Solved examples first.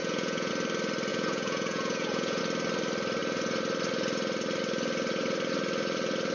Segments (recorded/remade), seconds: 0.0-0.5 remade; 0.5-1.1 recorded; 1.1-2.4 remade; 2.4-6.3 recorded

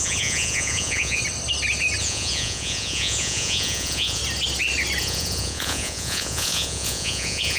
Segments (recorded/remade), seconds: 0.0-1.2 remade; 1.2-2.0 recorded; 2.0-4.2 remade; 4.2-5.0 recorded; 5.0-7.6 remade

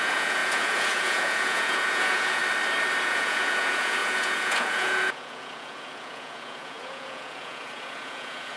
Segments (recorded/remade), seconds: 0.0-2.4 remade; 2.4-3.0 recorded; 3.0-8.6 remade

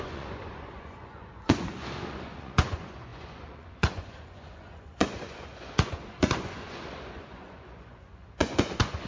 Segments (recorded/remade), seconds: 0.0-9.1 remade